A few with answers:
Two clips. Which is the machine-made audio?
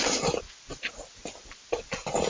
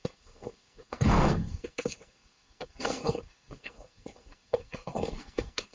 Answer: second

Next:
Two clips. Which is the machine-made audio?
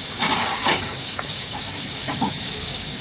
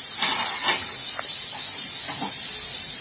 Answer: first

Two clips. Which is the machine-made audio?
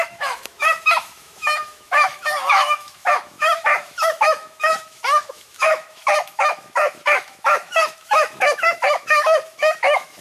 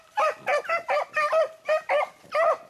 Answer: first